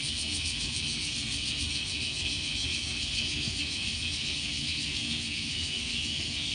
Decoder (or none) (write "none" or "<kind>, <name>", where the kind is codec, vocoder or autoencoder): codec, SNAC